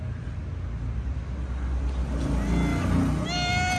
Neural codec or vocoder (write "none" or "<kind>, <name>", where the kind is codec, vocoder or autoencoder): none